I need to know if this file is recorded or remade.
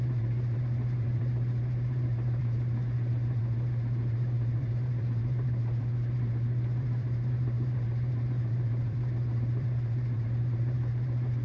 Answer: remade